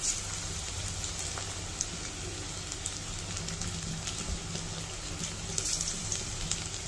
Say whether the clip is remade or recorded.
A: recorded